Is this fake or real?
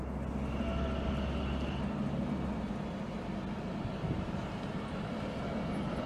real